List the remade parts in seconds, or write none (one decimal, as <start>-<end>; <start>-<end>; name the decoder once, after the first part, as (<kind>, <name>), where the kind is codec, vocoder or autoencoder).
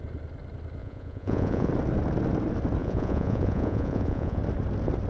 0.8-1.7 (vocoder, Vocos); 2.8-4.4